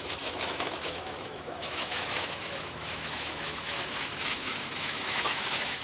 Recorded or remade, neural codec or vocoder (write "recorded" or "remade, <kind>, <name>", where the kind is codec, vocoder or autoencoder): remade, autoencoder, DAC-VAE